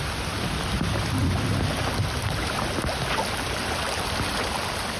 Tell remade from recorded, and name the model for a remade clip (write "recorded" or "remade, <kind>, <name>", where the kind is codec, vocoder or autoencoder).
recorded